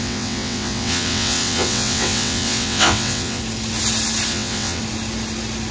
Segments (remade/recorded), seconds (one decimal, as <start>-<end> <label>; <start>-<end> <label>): 0.0-3.4 remade; 3.4-4.3 recorded; 4.3-4.8 remade; 4.8-5.7 recorded